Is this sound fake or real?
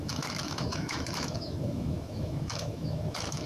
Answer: fake